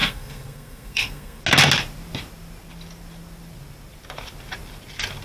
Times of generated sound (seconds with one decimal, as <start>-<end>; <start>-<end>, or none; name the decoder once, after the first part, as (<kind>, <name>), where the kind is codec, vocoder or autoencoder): 0.0-1.4 (codec, SNAC)